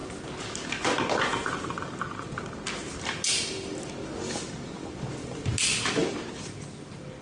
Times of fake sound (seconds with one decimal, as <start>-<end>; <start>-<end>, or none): 6.0-6.6